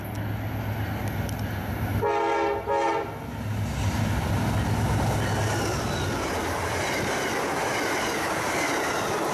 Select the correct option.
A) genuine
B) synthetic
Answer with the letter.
A